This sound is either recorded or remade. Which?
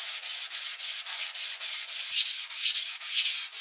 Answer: remade